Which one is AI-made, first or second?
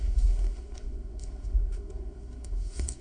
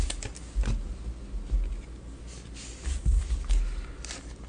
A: first